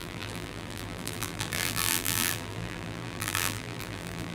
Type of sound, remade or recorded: remade